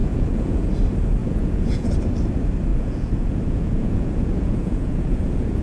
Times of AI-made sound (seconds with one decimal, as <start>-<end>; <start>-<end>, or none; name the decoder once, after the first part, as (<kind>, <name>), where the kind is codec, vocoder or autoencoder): 0.0-0.7 (vocoder, Vocos); 1.2-1.9; 2.7-5.6